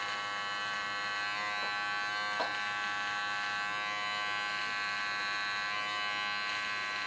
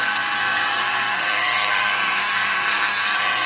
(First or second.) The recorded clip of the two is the first